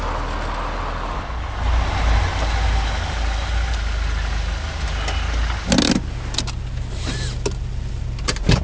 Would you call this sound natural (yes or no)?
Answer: yes